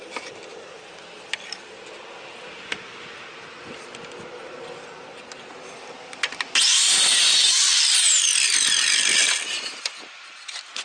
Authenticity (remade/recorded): recorded